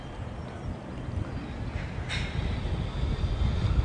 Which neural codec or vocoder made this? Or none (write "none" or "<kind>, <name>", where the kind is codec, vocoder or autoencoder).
none